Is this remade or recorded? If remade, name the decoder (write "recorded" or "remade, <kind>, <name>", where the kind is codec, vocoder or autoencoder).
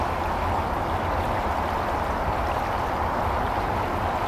recorded